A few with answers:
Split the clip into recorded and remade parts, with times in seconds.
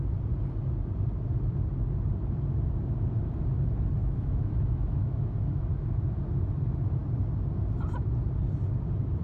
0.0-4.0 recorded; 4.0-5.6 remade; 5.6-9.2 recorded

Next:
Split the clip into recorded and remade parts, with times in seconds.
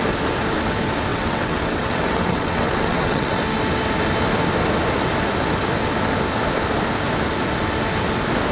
0.0-1.1 recorded; 1.1-3.4 remade; 3.4-8.5 recorded